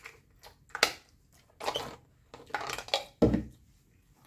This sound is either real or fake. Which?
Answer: real